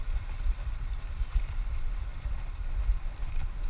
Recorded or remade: remade